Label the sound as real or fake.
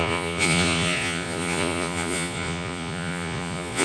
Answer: fake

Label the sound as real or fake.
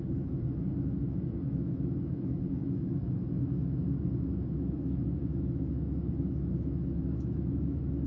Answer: fake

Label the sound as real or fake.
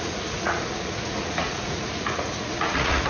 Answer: fake